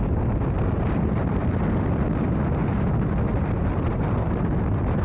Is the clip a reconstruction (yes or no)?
no